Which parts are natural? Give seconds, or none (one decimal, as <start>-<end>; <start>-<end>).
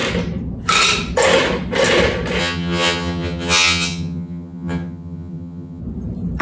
0.0-2.4; 5.8-6.4